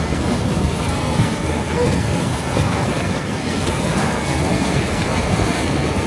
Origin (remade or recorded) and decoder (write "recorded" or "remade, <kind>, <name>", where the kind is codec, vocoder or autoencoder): remade, codec, SNAC